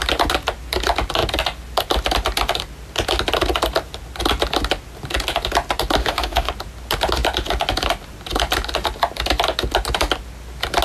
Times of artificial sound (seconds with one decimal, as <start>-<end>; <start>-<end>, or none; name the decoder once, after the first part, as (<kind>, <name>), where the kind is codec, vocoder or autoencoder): 6.0-6.5 (autoencoder, DAC-VAE)